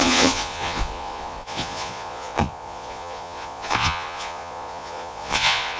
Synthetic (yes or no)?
yes